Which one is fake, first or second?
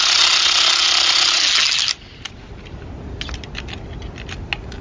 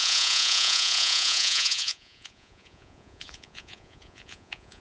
second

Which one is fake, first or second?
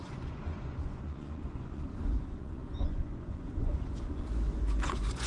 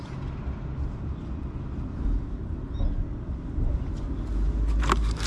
first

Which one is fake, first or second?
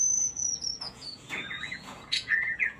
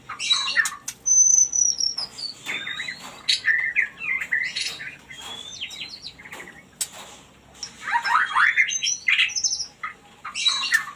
first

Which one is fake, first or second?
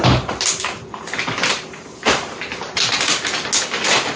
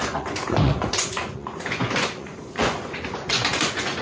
second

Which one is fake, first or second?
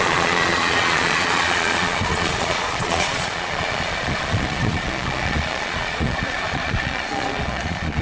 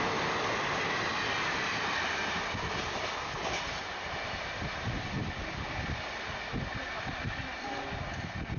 first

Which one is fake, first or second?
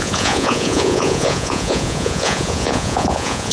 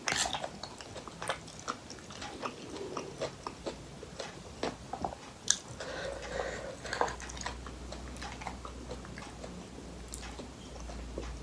first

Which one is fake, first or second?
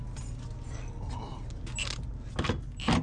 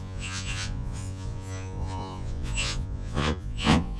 second